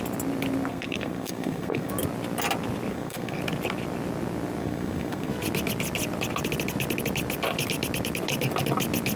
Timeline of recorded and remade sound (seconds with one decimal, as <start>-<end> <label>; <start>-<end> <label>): 0.0-0.7 recorded; 0.7-1.9 remade; 1.9-2.9 recorded; 2.9-3.4 remade; 3.4-4.6 recorded; 4.6-5.3 remade; 5.3-9.2 recorded